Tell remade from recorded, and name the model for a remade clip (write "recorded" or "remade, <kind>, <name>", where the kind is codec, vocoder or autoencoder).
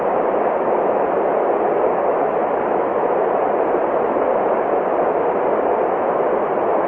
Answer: recorded